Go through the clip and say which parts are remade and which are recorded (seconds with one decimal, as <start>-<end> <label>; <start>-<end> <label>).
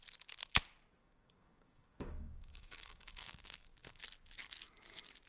0.0-1.0 recorded; 1.0-4.0 remade; 4.0-5.3 recorded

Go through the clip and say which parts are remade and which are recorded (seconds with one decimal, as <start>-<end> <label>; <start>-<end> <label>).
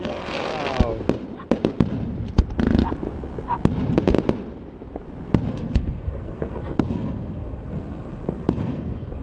0.0-0.5 remade; 0.5-5.5 recorded; 5.5-9.2 remade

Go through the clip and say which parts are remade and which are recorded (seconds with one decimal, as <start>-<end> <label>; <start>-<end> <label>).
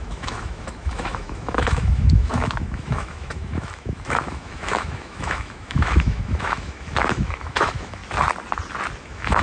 0.0-8.0 remade; 8.0-9.0 recorded; 9.0-9.4 remade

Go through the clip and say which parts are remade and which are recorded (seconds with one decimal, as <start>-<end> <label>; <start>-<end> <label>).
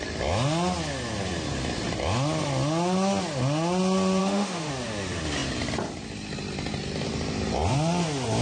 0.0-4.2 recorded; 4.2-4.7 remade; 4.7-8.4 recorded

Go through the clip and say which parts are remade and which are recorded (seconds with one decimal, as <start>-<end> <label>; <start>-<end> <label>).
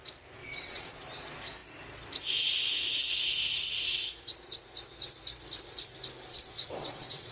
0.0-0.4 recorded; 0.4-1.0 remade; 1.0-6.3 recorded; 6.3-7.3 remade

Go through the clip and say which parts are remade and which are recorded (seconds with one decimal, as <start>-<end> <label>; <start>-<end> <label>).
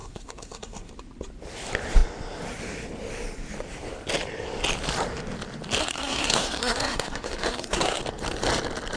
0.0-0.9 remade; 0.9-5.8 recorded; 5.8-8.0 remade; 8.0-9.0 recorded